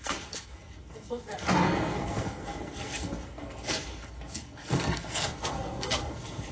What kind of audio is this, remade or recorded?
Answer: remade